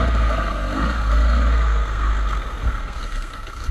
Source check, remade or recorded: remade